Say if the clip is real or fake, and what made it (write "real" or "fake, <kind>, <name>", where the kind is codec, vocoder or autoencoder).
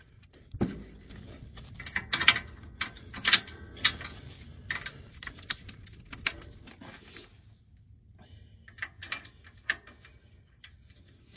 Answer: real